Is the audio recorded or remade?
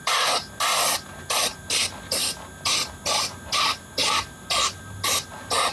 recorded